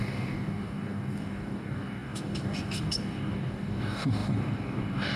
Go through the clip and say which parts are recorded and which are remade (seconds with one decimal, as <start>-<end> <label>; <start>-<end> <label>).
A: 0.0-5.2 remade